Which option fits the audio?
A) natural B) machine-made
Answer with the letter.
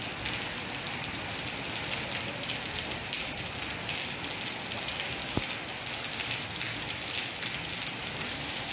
A